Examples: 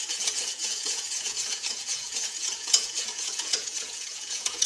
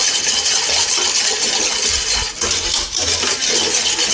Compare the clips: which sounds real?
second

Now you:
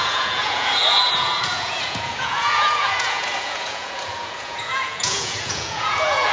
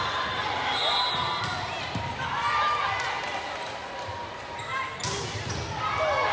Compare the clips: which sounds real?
second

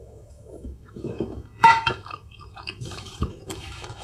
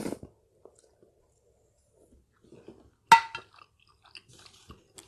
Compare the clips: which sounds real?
second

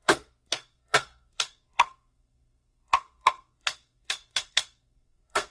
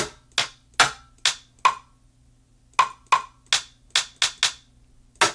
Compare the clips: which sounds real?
second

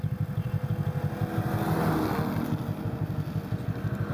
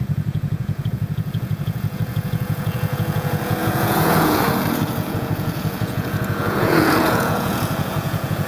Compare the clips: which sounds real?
first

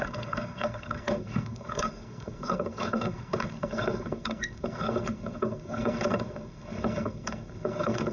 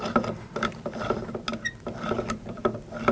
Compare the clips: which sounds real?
second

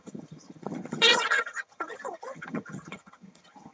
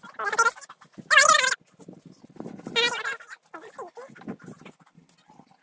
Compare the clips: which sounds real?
second